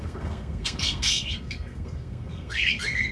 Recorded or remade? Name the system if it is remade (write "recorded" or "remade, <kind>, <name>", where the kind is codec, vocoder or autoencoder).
remade, codec, SNAC